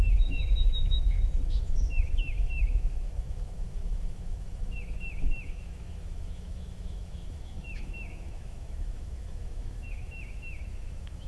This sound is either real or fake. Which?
fake